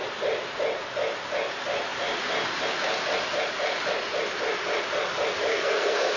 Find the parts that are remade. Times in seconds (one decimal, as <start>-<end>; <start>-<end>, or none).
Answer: 5.5-6.2